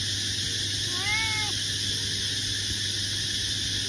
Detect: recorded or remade recorded